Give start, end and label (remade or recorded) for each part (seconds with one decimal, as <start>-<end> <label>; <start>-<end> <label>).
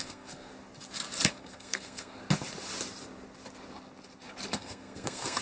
0.0-0.5 remade; 0.5-1.3 recorded; 1.3-2.2 remade; 2.2-4.5 recorded; 4.5-5.4 remade